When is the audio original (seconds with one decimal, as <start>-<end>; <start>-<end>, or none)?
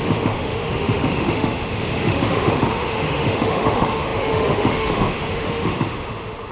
none